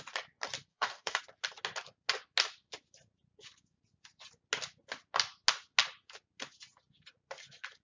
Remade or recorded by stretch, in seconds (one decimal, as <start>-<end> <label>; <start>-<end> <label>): 0.0-0.7 recorded; 0.7-1.2 remade; 1.2-7.8 recorded